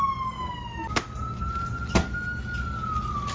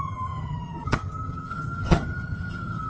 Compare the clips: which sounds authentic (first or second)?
first